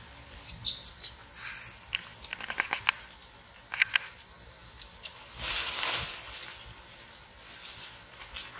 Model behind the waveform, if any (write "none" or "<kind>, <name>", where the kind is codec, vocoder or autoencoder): none